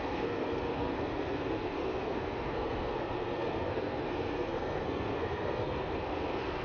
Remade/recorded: remade